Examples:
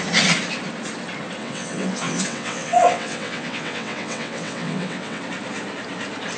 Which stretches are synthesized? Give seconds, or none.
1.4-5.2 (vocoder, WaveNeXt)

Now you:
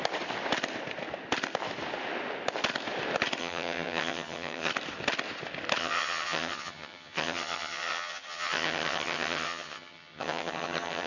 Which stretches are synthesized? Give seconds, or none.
3.4-4.7 (vocoder, HiFi-GAN); 5.8-11.1

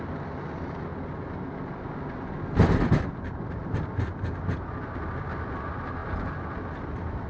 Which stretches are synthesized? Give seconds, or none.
none